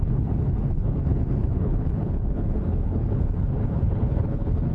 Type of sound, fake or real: fake